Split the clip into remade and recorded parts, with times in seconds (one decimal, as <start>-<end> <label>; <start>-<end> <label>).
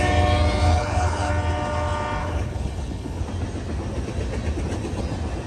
0.0-0.7 recorded; 0.7-1.3 remade; 1.3-2.2 recorded; 2.2-3.2 remade; 3.2-5.5 recorded